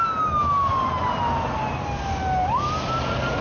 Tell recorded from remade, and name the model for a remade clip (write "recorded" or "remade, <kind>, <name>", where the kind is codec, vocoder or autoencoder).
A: recorded